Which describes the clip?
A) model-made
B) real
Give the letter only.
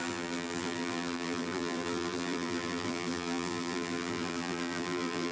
A